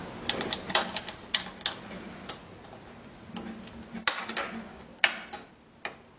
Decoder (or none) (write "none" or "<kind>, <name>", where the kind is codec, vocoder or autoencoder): none